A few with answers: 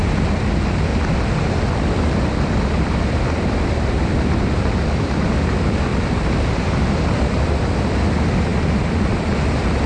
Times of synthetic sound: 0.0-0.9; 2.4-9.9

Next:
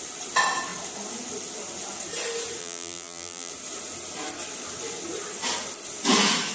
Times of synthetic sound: 2.6-3.5